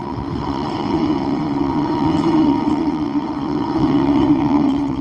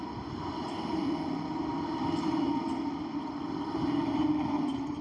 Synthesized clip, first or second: first